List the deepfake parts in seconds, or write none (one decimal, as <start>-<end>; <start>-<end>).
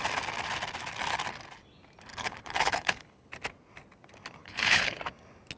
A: 2.1-3.3; 4.4-5.0